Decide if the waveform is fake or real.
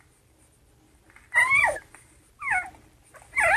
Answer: real